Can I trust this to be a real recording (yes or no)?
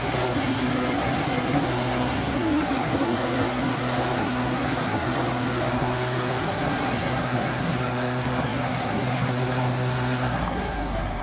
no